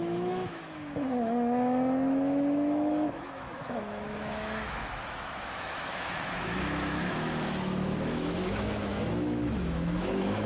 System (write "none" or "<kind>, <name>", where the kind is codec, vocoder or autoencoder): autoencoder, DAC-VAE